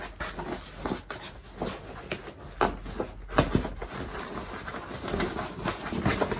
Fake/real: real